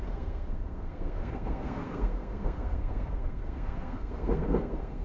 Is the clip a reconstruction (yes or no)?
yes